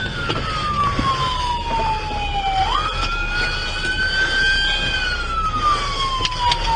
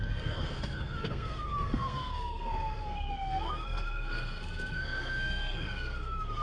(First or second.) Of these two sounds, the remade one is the second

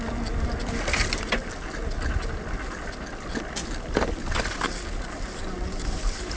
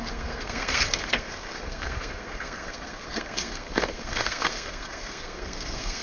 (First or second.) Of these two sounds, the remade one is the second